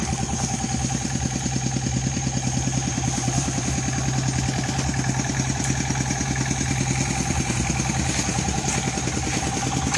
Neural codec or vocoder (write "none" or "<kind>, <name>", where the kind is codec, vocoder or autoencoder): none